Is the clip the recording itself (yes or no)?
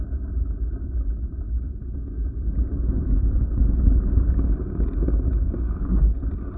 yes